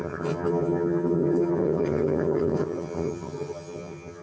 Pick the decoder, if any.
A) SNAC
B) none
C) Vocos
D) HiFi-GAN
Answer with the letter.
D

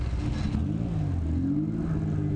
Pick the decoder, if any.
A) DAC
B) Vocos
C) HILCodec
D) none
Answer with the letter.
D